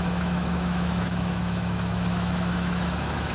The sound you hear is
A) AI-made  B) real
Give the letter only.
A